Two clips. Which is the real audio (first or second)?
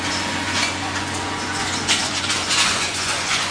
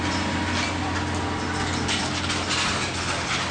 second